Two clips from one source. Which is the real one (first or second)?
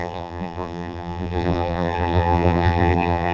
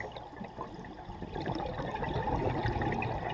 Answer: second